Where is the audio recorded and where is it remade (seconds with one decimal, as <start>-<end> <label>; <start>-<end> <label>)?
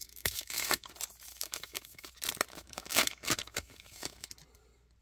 0.0-0.9 remade; 0.9-1.3 recorded; 1.3-2.1 remade; 2.1-2.5 recorded; 2.5-4.3 remade; 4.3-5.0 recorded